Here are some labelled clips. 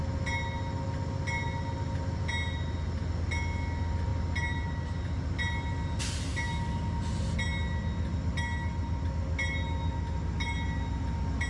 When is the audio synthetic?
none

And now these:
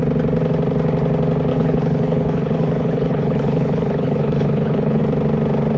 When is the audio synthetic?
1.5-5.0 (codec, HILCodec)

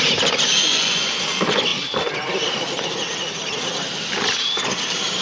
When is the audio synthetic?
0.6-1.1 (vocoder, Vocos)

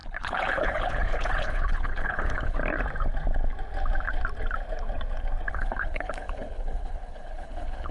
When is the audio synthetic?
0.0-2.6 (codec, HILCodec); 5.5-7.9

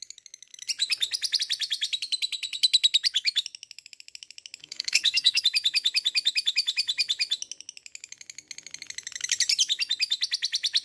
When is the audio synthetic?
4.6-5.4 (codec, SNAC)

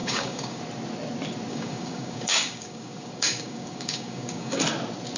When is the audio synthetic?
0.0-0.6 (codec, DAC); 1.5-4.6